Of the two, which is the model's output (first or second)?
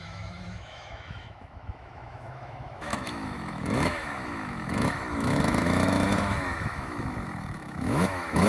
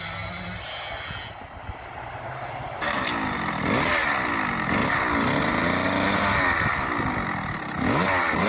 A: first